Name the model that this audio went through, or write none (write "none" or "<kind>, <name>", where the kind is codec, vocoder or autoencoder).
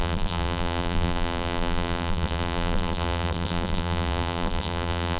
vocoder, BigVGAN v2